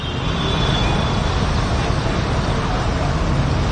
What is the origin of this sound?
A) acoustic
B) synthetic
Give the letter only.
A